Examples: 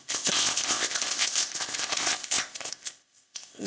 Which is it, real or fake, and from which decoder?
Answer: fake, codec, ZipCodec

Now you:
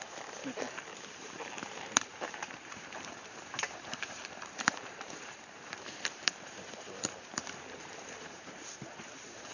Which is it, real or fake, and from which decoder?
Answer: fake, vocoder, BigVGAN v2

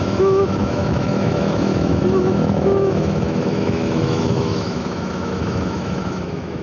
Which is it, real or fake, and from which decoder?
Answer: fake, autoencoder, DAC-VAE